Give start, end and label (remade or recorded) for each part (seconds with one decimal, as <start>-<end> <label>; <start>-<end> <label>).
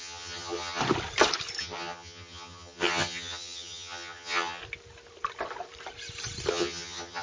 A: 0.0-0.8 remade; 0.8-1.6 recorded; 1.6-4.6 remade; 4.6-6.5 recorded; 6.5-7.2 remade